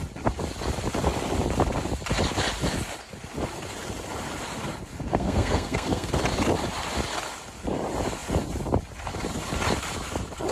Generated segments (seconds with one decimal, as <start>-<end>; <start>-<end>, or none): 5.1-6.1